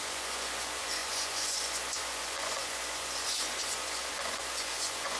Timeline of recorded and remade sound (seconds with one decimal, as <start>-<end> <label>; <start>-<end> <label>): 0.0-5.2 remade